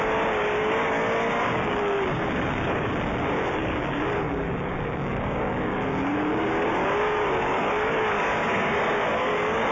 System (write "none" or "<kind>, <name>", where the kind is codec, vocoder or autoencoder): codec, DAC